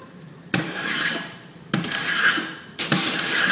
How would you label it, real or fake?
fake